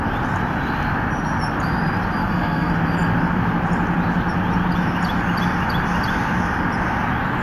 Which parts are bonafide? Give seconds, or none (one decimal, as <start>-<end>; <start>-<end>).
0.0-2.2; 2.7-7.4